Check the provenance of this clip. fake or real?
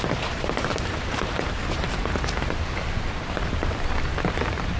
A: fake